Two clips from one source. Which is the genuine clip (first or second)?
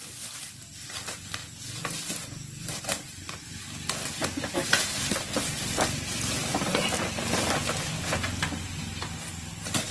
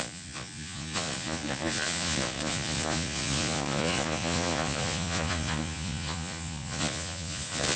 first